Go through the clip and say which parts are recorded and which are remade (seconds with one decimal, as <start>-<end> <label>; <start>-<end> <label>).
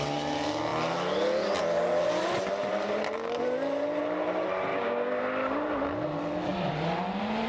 0.0-4.7 recorded; 4.7-5.2 remade; 5.2-7.5 recorded